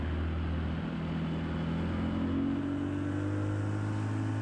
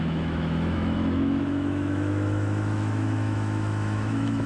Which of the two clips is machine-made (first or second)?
second